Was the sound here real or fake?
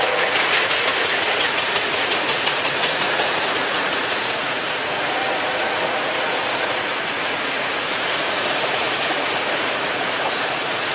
fake